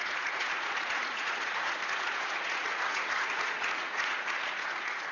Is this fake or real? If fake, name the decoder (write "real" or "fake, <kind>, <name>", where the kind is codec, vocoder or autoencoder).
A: fake, vocoder, Vocos